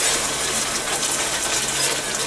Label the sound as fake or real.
real